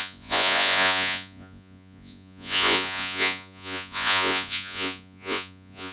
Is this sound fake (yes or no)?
yes